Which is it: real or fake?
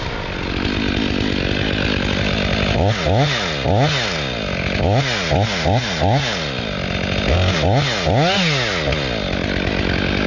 real